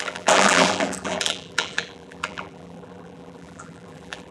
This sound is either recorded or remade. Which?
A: remade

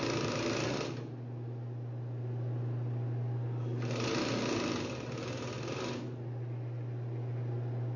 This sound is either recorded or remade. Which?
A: recorded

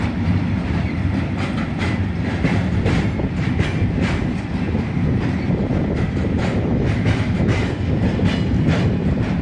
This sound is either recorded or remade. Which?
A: remade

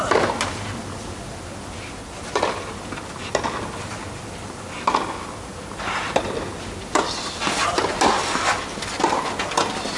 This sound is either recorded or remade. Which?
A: recorded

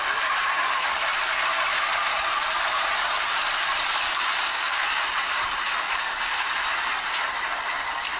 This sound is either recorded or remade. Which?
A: remade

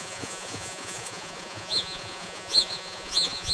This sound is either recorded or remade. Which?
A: remade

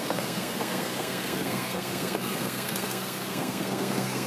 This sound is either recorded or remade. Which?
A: remade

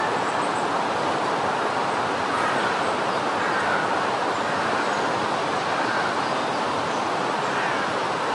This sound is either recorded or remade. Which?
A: recorded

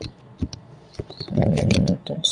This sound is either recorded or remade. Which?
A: remade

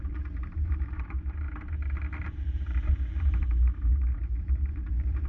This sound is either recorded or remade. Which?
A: remade